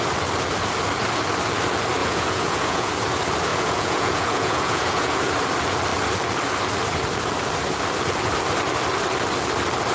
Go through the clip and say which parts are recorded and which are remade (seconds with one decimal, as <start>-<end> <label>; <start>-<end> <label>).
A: 0.0-2.0 recorded; 2.0-2.9 remade; 2.9-3.5 recorded; 3.5-5.2 remade; 5.2-9.9 recorded